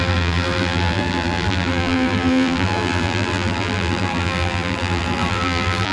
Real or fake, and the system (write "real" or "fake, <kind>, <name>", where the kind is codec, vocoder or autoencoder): fake, vocoder, BigVGAN v2